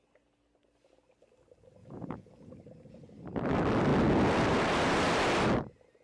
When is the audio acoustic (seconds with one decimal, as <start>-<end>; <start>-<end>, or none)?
0.0-1.8; 2.5-6.0